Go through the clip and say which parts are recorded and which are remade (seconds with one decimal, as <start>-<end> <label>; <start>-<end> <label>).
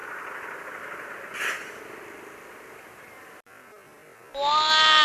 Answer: 0.0-5.0 recorded